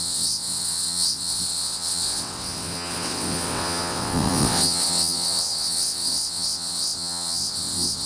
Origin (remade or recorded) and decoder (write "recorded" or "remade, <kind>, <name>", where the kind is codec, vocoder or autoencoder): remade, vocoder, WaveNeXt